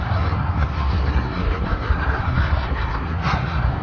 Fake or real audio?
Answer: fake